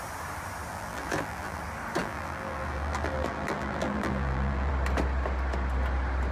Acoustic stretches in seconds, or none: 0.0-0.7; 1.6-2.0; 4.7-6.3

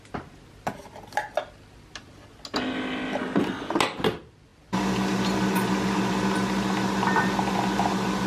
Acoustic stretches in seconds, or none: 0.0-8.3

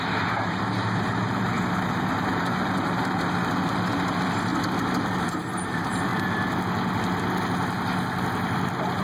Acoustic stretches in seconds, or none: 4.5-5.2; 6.1-9.0

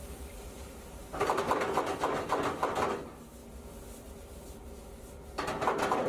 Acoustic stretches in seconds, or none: 1.4-6.1

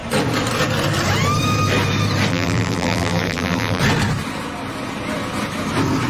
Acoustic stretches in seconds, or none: 0.0-2.3; 3.8-6.1